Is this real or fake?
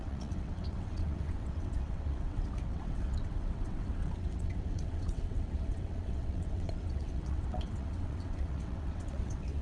fake